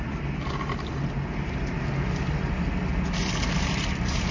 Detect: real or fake real